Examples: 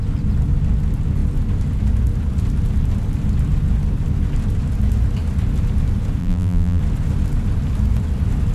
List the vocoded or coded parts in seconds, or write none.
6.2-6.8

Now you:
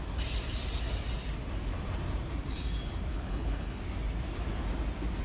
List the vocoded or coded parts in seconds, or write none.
3.1-3.8

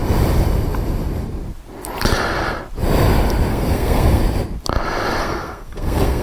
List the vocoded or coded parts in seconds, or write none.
3.5-4.2; 5.2-6.2